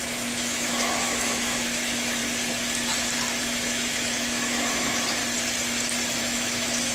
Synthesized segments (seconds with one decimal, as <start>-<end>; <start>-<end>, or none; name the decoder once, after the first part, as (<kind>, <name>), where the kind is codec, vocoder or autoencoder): 0.0-2.2 (autoencoder, DAC-VAE); 3.4-5.2; 6.2-6.9